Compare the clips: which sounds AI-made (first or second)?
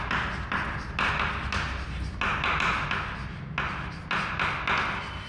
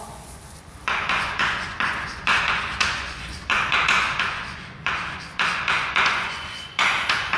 second